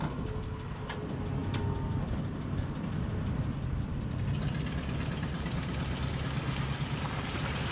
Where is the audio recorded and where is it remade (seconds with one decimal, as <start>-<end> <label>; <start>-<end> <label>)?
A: 0.0-7.7 recorded